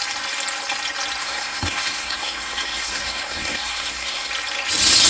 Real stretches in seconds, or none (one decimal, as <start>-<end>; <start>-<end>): 0.0-1.2; 4.3-5.1